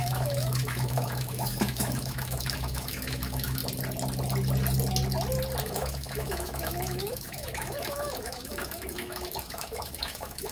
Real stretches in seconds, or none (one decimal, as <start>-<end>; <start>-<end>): 3.6-5.6